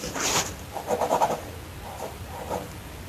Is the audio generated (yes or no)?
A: no